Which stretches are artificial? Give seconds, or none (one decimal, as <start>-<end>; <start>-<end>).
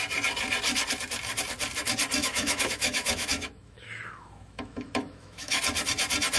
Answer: 2.2-5.6